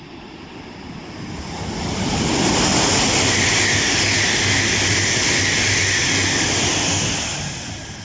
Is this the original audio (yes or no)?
yes